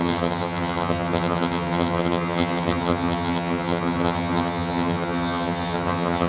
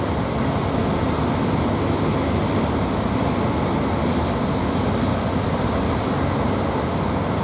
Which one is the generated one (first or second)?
first